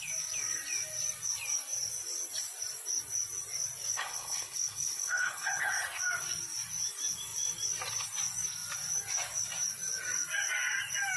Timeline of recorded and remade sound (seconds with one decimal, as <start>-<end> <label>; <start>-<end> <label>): 0.0-3.9 recorded; 3.9-5.7 remade; 5.7-11.2 recorded